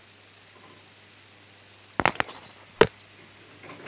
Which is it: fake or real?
real